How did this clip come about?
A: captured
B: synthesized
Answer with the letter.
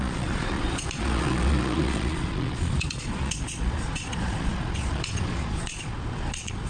B